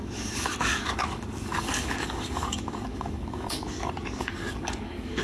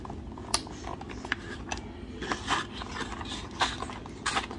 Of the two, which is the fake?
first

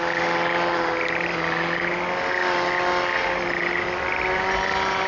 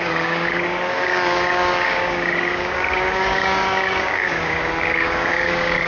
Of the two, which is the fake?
second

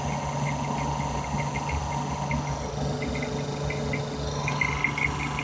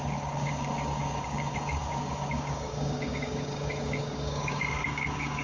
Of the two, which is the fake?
second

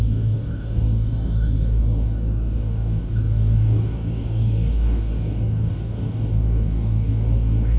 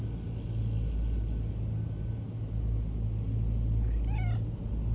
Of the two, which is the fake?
first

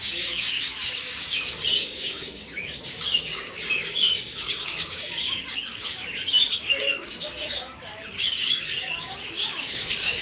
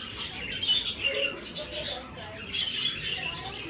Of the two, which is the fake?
first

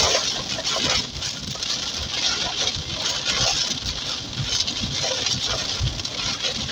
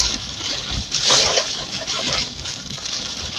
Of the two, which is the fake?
second